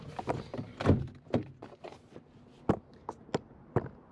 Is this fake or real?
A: real